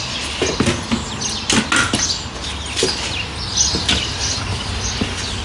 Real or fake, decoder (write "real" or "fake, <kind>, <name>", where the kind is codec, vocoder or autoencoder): real